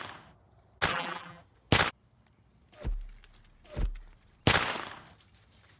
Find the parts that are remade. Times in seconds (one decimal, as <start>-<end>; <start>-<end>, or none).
0.9-1.4